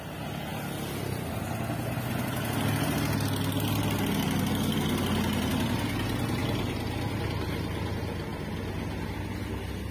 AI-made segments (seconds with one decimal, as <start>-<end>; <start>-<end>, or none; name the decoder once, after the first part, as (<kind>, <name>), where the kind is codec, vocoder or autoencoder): none